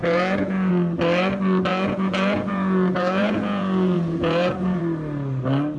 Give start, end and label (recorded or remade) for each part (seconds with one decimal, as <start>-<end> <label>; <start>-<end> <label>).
0.0-0.7 remade; 0.7-1.7 recorded; 1.7-4.8 remade; 4.8-5.8 recorded